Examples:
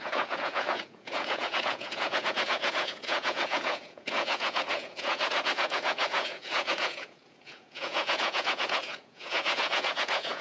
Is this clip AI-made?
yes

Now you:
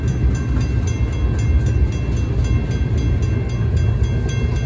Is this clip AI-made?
no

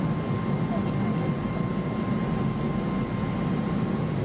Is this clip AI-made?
no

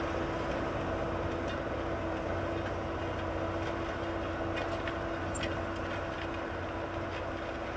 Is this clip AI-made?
no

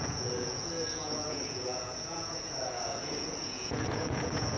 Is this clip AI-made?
yes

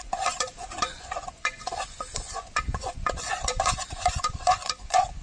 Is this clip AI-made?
yes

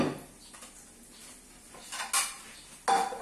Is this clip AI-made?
no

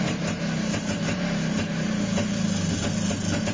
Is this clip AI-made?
no